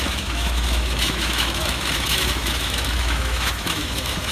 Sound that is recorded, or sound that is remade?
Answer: remade